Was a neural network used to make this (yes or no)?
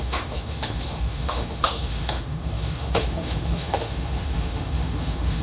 yes